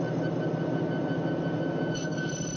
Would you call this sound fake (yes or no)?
no